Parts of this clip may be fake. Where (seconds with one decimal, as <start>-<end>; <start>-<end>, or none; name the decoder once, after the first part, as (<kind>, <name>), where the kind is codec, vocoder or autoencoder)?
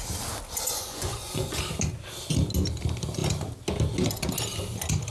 0.7-1.6 (vocoder, Vocos)